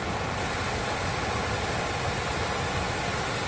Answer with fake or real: real